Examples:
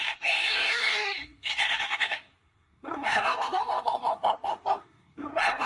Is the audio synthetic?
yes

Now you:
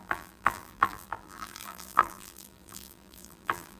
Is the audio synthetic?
yes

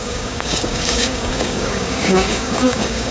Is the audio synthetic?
yes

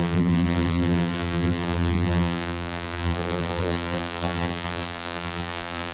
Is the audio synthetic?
yes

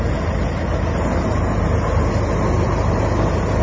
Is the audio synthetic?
no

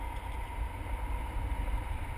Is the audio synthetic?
no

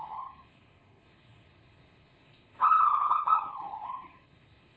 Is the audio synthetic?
yes